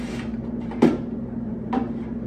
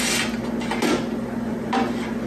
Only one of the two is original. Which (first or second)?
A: second